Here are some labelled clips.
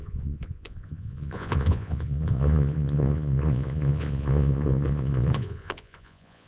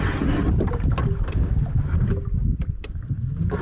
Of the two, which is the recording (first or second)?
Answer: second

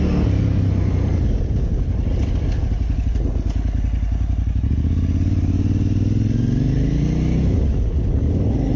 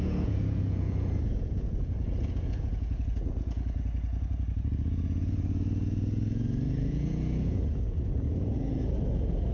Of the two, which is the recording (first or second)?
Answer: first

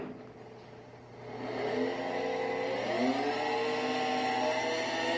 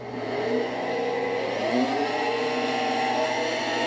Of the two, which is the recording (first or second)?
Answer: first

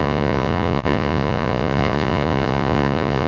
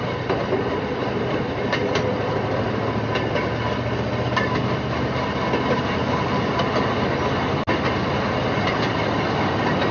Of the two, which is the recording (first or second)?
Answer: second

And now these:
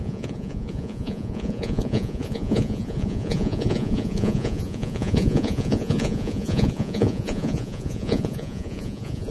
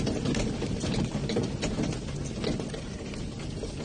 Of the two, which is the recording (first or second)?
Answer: second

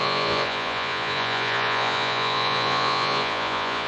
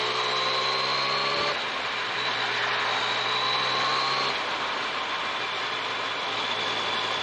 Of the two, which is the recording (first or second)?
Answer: second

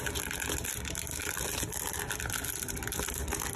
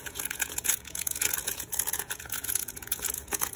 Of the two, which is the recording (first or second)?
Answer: first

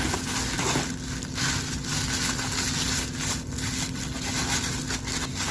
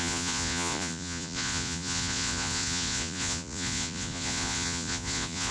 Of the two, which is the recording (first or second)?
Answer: first